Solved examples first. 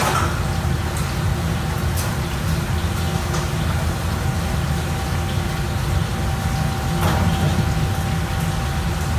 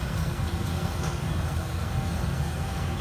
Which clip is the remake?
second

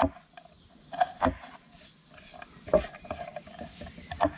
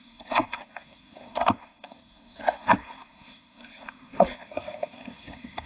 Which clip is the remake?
second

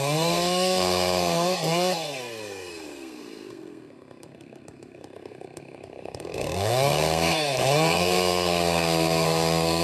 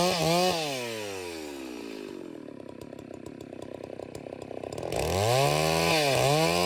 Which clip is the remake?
first